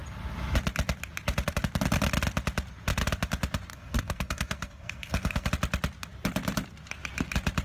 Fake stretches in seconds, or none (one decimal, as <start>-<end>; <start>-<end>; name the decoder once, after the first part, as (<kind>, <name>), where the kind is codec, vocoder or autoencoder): 3.7-5.5 (codec, SNAC)